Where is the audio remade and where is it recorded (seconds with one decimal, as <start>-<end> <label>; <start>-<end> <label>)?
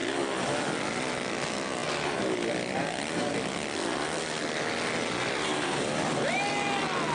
0.0-7.1 recorded